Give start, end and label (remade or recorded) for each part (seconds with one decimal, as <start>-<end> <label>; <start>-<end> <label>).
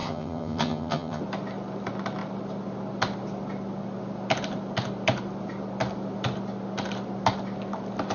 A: 0.0-1.2 remade; 1.2-8.1 recorded